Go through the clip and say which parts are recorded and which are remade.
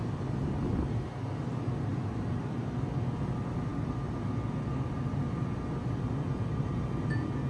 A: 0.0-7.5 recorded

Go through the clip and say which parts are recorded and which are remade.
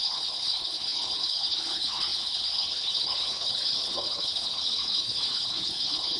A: 0.0-6.2 remade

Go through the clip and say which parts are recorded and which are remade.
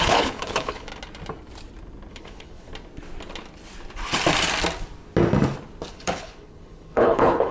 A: 0.0-0.9 remade; 0.9-2.1 recorded; 2.1-2.7 remade; 2.7-5.9 recorded; 5.9-7.5 remade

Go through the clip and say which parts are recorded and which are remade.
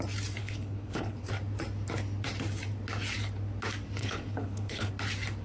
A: 0.0-0.4 recorded; 0.4-1.3 remade; 1.3-4.0 recorded; 4.0-4.9 remade; 4.9-5.4 recorded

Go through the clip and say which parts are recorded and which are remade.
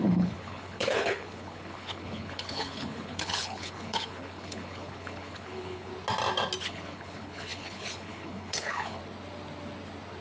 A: 0.0-5.9 remade; 5.9-6.6 recorded; 6.6-9.0 remade; 9.0-10.2 recorded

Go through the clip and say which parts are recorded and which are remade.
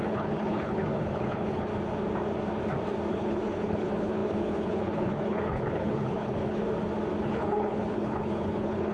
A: 0.0-1.7 remade; 1.7-3.1 recorded; 3.1-6.6 remade; 6.6-7.2 recorded; 7.2-8.9 remade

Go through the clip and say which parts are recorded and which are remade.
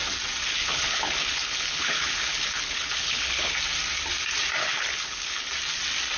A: 0.0-0.5 recorded; 0.5-3.6 remade; 3.6-4.6 recorded; 4.6-5.5 remade; 5.5-6.2 recorded